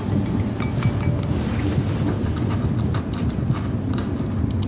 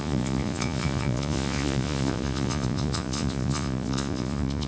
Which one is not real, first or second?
second